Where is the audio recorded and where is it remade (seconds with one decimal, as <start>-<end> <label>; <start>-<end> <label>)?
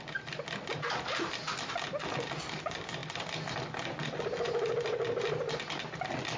0.0-6.4 recorded